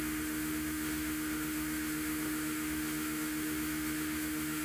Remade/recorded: remade